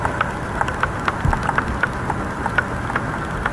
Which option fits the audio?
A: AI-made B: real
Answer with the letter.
B